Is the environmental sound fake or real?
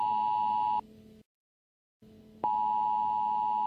real